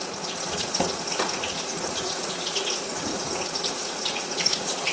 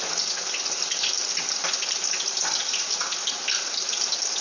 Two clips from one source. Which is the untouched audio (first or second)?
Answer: second